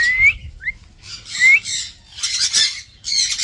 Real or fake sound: real